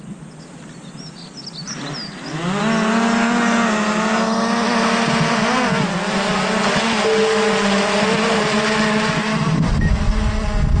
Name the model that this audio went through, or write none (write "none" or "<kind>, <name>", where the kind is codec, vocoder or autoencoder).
none